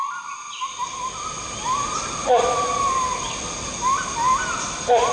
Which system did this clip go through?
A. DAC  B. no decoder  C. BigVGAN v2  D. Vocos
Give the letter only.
B